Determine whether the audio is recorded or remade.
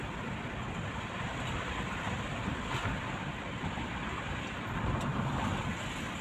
recorded